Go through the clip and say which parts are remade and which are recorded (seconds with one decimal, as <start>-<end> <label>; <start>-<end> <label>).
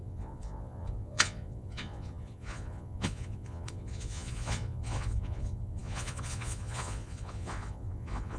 0.0-8.4 remade